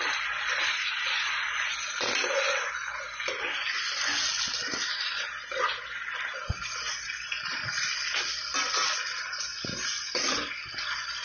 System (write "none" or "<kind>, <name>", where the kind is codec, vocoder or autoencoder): none